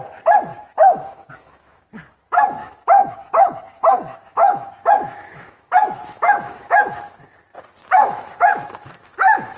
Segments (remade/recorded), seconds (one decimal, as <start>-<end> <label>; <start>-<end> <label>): 0.0-0.5 recorded; 0.5-1.9 remade; 1.9-2.6 recorded; 2.6-7.3 remade; 7.3-7.8 recorded; 7.8-9.6 remade